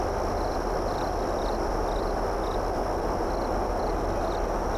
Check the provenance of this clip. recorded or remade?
recorded